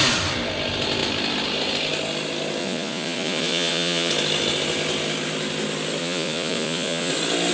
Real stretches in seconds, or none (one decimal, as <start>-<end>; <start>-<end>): 0.0-2.6; 4.1-6.0; 7.1-7.5